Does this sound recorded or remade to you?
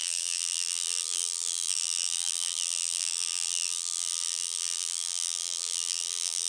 remade